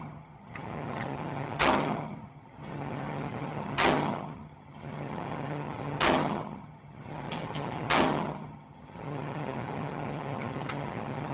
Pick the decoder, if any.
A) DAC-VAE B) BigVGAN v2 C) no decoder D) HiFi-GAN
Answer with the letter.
D